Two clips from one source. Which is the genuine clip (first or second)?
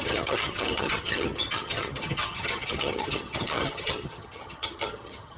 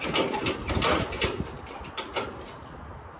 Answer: second